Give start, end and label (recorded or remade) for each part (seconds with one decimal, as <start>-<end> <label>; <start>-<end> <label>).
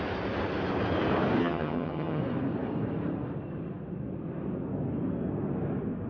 0.0-1.4 recorded; 1.4-2.2 remade; 2.2-6.1 recorded